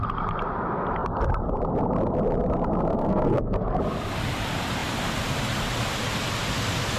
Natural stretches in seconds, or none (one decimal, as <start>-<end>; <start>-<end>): 0.0-2.9; 3.8-7.0